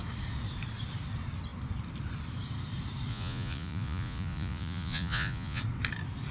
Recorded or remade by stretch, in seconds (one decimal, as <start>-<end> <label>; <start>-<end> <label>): 0.0-3.1 recorded; 3.1-5.6 remade; 5.6-6.3 recorded

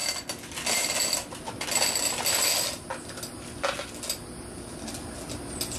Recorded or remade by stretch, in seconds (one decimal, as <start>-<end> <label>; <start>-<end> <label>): 0.0-5.8 recorded

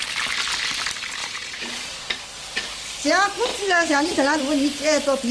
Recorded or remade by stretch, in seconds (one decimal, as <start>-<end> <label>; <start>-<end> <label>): 0.0-1.2 recorded; 1.2-2.1 remade; 2.1-3.5 recorded; 3.5-4.4 remade; 4.4-5.3 recorded

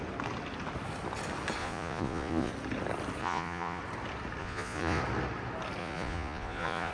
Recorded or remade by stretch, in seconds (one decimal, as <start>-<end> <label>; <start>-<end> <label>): 0.0-1.6 recorded; 1.6-2.5 remade; 2.5-3.2 recorded; 3.2-3.8 remade; 3.8-4.4 recorded; 4.4-5.0 remade; 5.0-5.8 recorded; 5.8-6.9 remade

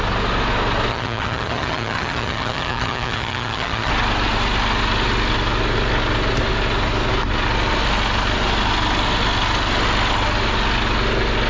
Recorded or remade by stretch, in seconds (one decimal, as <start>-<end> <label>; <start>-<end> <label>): 0.0-0.9 recorded; 0.9-3.9 remade; 3.9-11.5 recorded